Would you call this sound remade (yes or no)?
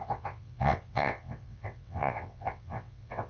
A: yes